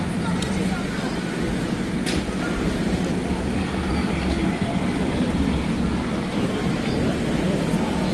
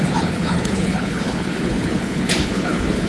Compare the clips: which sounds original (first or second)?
first